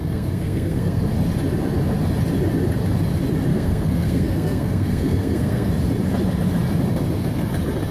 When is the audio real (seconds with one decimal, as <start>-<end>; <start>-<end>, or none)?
1.0-3.5; 5.7-7.9